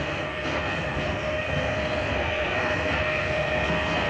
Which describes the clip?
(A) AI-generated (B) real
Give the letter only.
A